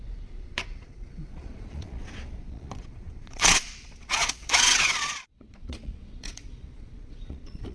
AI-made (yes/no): yes